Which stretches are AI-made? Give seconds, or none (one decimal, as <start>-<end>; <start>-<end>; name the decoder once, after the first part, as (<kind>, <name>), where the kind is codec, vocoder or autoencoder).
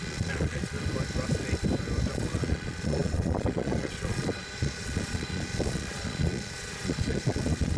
0.0-0.6 (vocoder, Vocos); 2.1-7.8